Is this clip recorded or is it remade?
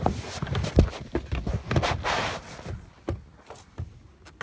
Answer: recorded